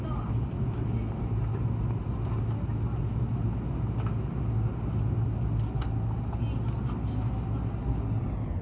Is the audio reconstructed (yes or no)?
no